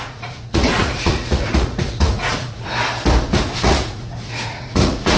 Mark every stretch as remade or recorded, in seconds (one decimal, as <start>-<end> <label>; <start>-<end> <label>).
0.0-2.7 remade; 2.7-3.6 recorded; 3.6-5.2 remade